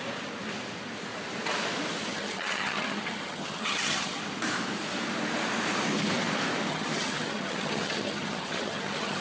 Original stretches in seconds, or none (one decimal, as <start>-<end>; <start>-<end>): 0.0-2.1; 4.2-6.7